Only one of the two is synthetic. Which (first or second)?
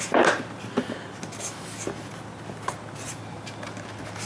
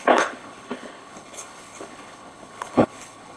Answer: second